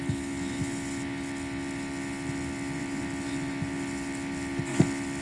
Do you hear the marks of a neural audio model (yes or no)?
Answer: no